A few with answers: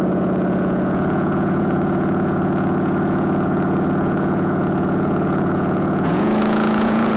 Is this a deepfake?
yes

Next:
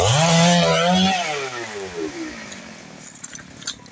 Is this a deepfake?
no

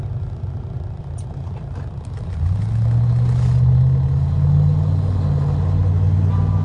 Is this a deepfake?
no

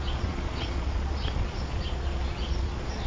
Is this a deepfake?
yes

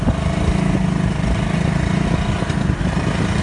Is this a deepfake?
no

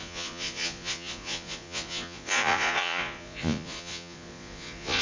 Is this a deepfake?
yes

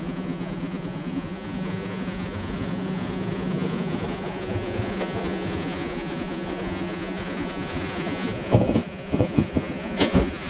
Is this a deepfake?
yes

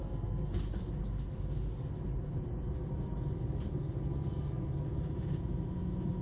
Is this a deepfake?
no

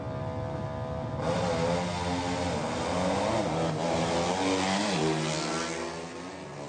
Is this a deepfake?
no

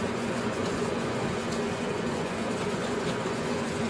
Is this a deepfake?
yes